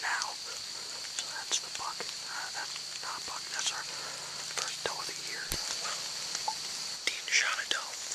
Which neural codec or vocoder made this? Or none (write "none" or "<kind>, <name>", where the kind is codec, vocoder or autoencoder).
none